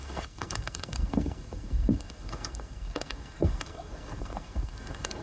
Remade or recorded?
remade